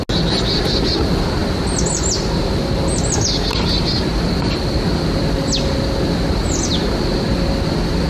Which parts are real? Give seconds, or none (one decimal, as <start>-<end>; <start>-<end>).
0.0-8.1

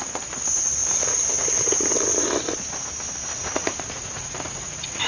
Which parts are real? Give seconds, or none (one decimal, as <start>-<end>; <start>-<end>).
0.0-3.3

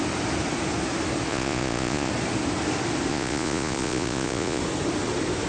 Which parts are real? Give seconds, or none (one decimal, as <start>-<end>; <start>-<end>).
0.0-1.3; 2.1-3.1; 4.6-5.5

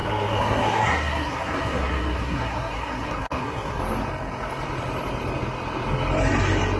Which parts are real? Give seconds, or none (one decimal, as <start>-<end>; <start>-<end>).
3.8-6.8

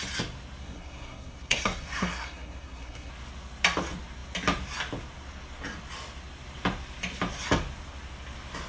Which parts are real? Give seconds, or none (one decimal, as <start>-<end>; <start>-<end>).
0.0-0.6; 3.1-8.7

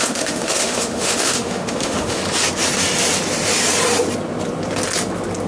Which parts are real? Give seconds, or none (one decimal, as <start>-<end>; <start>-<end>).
2.2-5.5

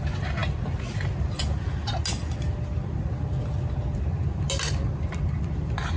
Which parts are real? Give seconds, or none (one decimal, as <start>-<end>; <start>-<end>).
0.0-6.0

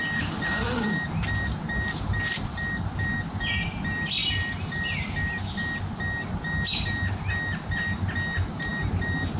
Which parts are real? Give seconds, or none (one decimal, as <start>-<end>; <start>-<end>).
0.0-9.4